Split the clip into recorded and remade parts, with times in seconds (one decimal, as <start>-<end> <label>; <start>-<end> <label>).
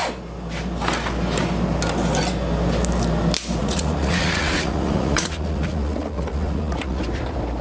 0.0-3.6 recorded; 3.6-7.0 remade; 7.0-7.6 recorded